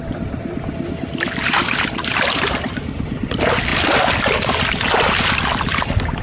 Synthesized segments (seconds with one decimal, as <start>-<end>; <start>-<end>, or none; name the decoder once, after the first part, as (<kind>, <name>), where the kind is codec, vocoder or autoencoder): 1.6-2.8 (vocoder, BigVGAN v2)